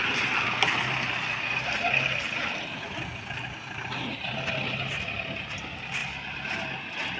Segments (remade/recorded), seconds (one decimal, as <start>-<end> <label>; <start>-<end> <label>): 0.0-7.2 recorded